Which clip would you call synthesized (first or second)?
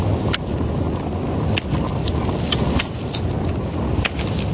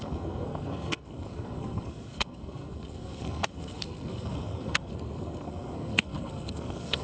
second